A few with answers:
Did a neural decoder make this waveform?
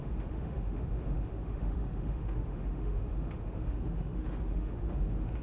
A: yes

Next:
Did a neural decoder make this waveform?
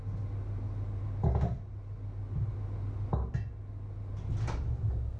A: no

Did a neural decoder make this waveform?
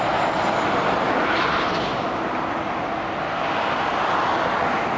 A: no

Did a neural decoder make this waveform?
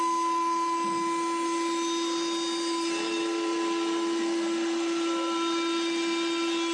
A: no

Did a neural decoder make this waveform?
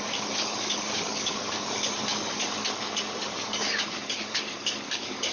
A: yes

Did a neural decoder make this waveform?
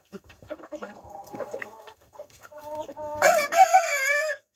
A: yes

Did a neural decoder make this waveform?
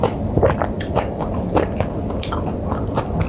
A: no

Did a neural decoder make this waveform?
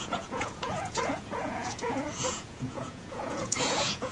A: yes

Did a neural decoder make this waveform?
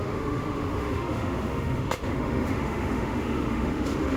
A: yes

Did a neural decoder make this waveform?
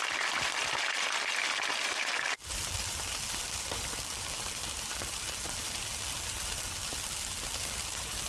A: no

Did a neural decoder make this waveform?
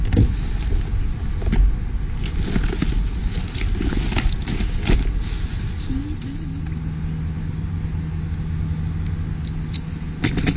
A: no